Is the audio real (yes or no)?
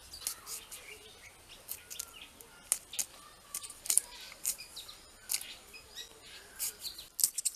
yes